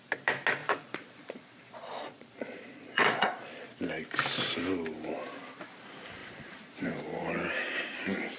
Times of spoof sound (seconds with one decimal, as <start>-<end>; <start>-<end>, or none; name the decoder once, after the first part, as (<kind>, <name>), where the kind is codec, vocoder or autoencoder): 0.6-3.8 (vocoder, Vocos); 6.2-7.0